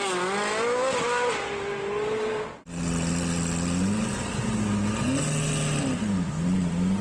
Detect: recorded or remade recorded